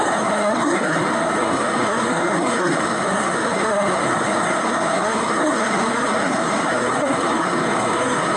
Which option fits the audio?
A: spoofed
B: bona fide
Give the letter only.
A